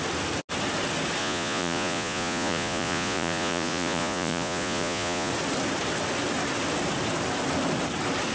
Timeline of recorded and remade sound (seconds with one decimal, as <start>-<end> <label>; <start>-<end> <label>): 0.0-1.2 recorded; 1.2-5.3 remade; 5.3-8.3 recorded